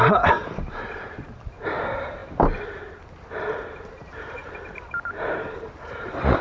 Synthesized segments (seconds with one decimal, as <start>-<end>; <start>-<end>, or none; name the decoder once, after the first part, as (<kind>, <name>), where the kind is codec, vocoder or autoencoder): 0.0-6.4 (vocoder, BigVGAN v2)